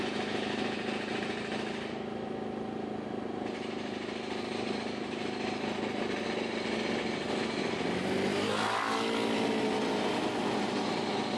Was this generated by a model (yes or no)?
no